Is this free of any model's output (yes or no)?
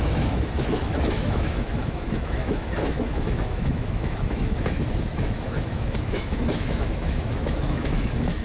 no